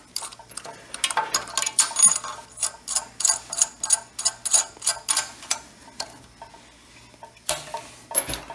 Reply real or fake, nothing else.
real